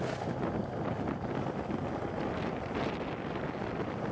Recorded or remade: recorded